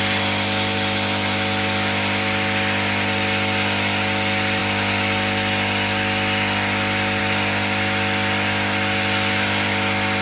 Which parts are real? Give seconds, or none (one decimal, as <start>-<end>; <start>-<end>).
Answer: 0.0-10.2